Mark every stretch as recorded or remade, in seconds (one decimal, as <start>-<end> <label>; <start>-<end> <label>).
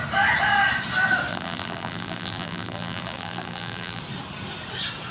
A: 0.0-1.3 recorded; 1.3-4.0 remade; 4.0-5.1 recorded